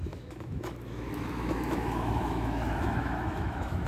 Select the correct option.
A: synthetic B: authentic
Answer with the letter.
A